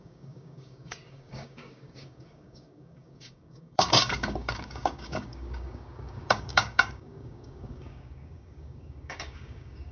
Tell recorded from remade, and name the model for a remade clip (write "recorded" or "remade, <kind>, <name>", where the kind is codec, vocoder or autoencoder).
remade, codec, DAC